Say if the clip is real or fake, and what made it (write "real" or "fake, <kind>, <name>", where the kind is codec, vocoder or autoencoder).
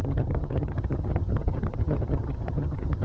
fake, vocoder, HiFi-GAN